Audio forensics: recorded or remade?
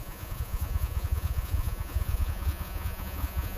remade